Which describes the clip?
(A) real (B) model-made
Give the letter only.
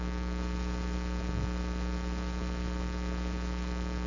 A